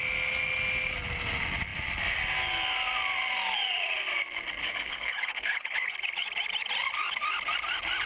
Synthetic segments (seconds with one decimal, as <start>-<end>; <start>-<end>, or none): 4.6-5.9